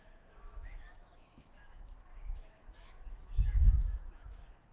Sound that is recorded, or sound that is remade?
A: remade